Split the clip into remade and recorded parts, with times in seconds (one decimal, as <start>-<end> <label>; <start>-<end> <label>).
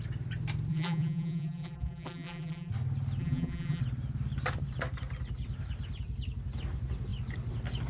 0.0-0.7 recorded; 0.7-2.7 remade; 2.7-3.2 recorded; 3.2-3.8 remade; 3.8-7.9 recorded